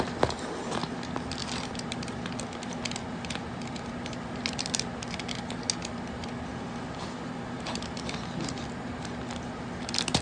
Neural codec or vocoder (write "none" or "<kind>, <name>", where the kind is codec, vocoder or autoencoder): none